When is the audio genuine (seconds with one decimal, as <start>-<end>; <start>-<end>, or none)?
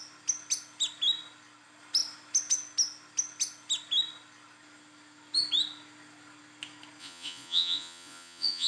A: 0.0-7.0